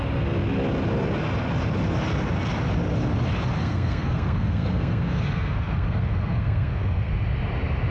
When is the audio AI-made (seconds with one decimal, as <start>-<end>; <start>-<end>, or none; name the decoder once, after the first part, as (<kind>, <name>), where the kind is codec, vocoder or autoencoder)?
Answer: 3.6-7.1 (codec, SNAC)

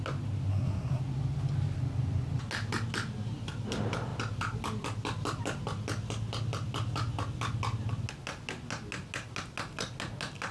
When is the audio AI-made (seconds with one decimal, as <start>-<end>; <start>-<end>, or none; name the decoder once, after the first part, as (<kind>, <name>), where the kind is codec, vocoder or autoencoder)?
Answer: 0.5-1.0 (codec, SNAC)

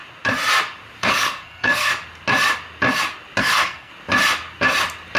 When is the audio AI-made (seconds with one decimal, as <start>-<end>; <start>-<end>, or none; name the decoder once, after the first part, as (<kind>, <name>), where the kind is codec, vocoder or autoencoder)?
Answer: 1.0-1.9 (codec, SNAC); 3.4-3.9

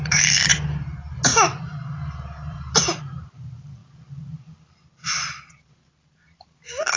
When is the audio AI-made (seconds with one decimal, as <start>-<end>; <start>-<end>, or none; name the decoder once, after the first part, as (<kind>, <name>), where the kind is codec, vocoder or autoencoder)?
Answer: 0.0-0.5 (vocoder, BigVGAN v2); 2.5-3.8; 5.4-7.0

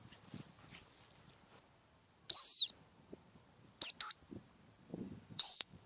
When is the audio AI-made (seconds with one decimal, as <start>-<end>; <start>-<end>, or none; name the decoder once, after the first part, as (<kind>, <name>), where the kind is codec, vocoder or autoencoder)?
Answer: 4.9-5.9 (vocoder, Vocos)

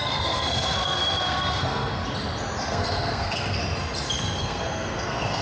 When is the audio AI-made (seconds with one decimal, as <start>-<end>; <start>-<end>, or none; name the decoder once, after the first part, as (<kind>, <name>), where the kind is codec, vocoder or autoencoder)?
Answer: 0.0-1.9 (codec, SNAC); 2.6-3.6; 4.4-5.4